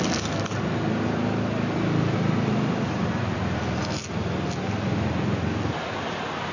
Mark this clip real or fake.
real